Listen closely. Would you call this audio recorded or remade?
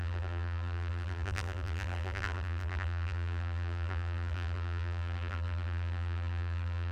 remade